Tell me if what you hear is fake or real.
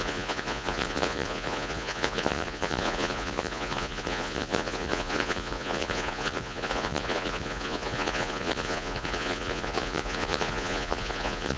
fake